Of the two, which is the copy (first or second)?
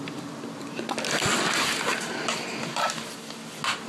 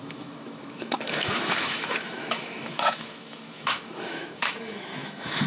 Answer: second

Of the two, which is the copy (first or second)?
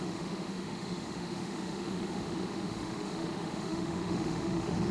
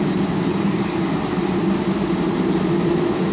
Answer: first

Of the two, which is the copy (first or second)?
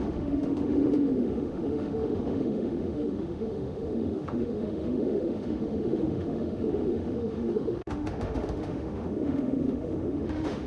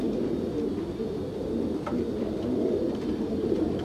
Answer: first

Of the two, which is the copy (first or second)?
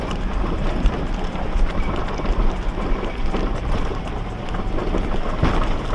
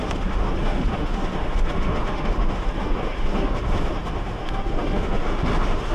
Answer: second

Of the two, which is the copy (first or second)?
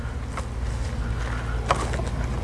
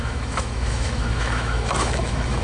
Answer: second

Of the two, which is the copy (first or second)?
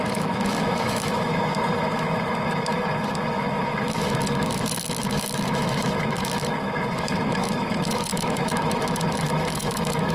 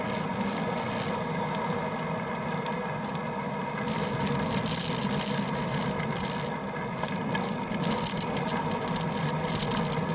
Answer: first